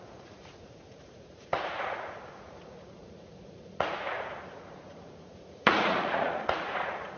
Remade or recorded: remade